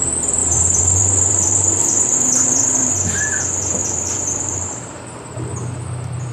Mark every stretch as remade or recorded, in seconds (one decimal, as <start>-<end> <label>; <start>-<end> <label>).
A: 0.0-0.4 recorded; 0.4-2.9 remade; 2.9-3.8 recorded; 3.8-5.6 remade; 5.6-6.3 recorded

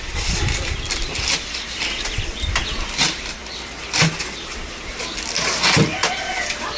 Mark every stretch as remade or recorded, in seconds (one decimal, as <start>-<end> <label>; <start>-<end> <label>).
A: 0.0-3.4 remade; 3.4-5.3 recorded; 5.3-6.8 remade

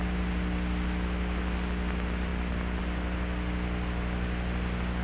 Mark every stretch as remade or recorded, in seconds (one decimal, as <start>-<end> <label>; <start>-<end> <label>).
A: 0.0-5.0 recorded

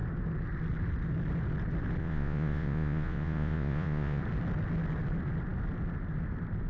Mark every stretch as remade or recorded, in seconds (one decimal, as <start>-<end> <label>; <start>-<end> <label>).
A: 0.0-2.0 recorded; 2.0-4.2 remade; 4.2-6.7 recorded

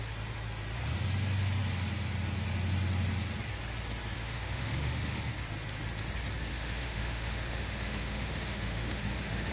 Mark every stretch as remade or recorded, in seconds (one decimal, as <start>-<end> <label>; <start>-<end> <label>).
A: 0.0-4.2 recorded; 4.2-5.3 remade; 5.3-6.5 recorded; 6.5-9.5 remade

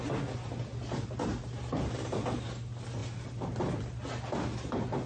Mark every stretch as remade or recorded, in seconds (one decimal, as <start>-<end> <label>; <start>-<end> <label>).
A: 0.0-5.1 recorded